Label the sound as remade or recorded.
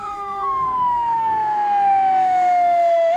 remade